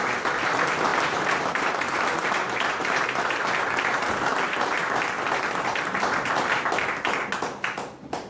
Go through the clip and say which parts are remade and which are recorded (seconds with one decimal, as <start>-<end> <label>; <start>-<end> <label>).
0.0-0.9 recorded; 0.9-3.2 remade; 3.2-8.3 recorded